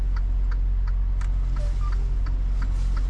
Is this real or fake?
real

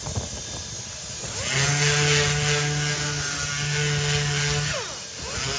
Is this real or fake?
real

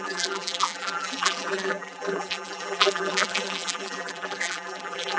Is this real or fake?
fake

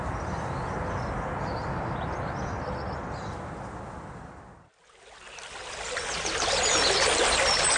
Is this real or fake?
real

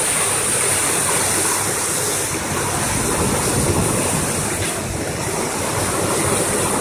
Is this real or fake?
real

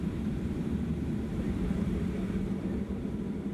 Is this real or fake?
fake